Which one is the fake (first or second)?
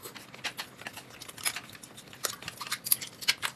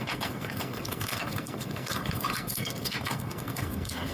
second